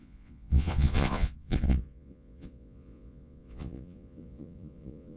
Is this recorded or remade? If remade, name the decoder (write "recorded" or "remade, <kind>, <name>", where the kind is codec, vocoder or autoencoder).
remade, vocoder, Vocos